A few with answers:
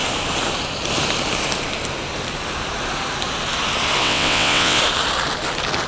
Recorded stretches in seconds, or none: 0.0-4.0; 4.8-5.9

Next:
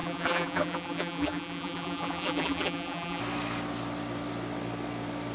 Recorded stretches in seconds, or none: 3.2-5.3

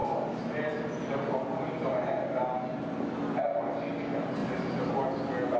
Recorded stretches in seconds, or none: 0.0-5.6

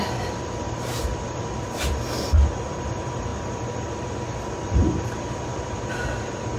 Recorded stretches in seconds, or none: 0.0-6.6